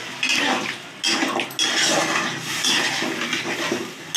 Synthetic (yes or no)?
no